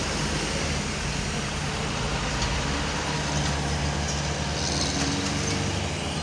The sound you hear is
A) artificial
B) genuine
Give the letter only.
B